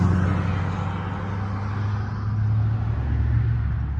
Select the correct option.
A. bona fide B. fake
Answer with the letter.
A